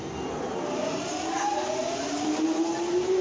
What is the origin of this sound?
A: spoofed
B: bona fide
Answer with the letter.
B